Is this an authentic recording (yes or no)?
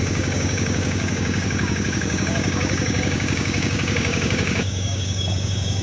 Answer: no